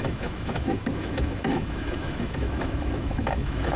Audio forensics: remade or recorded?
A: remade